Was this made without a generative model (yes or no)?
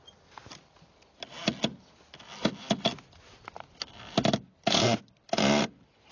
yes